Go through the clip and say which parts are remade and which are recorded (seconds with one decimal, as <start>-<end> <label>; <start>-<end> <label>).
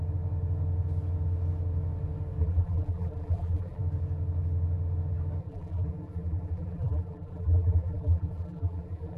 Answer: 0.0-2.4 recorded; 2.4-3.8 remade; 3.8-5.4 recorded; 5.4-9.2 remade